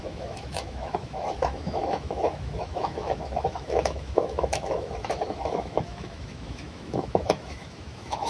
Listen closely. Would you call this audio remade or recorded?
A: remade